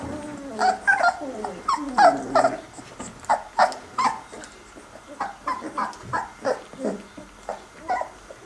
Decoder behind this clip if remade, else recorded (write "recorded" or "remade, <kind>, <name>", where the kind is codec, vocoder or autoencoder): recorded